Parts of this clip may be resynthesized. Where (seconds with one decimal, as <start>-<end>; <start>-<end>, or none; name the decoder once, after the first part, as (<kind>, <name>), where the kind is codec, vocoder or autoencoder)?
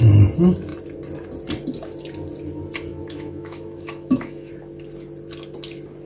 2.9-4.5 (autoencoder, DAC-VAE)